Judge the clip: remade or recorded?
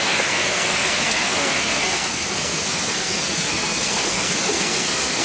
remade